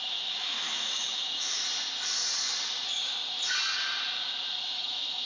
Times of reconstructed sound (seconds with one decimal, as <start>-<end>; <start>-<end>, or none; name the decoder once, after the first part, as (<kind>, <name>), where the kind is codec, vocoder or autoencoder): 0.0-1.6 (autoencoder, DAC-VAE); 4.6-5.3